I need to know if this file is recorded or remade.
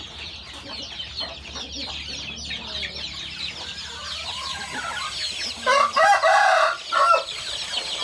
recorded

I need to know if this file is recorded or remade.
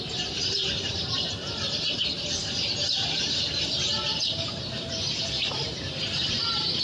remade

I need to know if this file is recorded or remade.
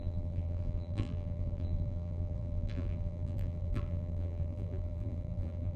remade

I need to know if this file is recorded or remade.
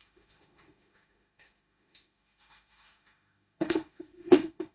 remade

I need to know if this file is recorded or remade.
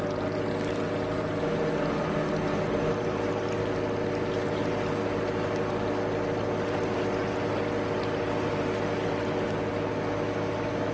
recorded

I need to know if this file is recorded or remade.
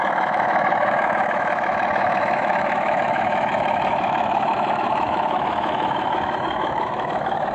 remade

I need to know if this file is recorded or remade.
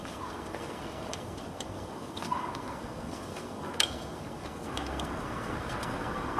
remade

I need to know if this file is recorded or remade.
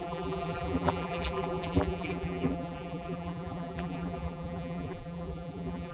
remade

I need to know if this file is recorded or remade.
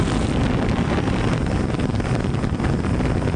recorded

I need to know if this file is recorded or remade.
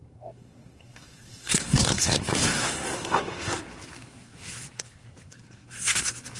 remade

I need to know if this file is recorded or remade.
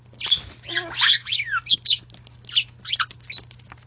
recorded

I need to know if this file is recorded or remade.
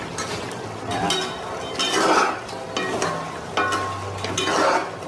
recorded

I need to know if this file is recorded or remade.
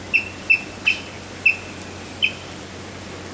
recorded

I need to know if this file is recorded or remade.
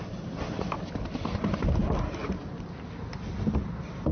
recorded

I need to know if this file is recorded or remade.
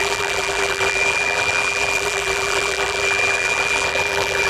remade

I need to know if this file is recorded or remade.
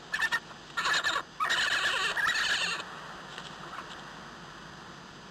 recorded